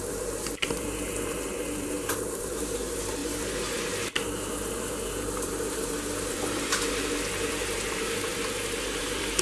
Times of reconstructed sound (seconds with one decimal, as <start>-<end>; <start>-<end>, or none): 0.0-8.3; 9.0-9.4